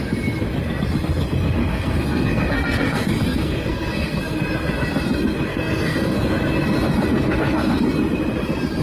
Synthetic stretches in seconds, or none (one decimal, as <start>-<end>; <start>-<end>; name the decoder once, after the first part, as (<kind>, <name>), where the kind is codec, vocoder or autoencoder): 1.6-4.4 (codec, SNAC); 5.5-6.3; 7.1-7.8